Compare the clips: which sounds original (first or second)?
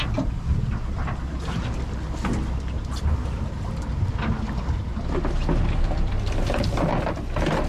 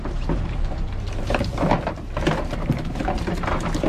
first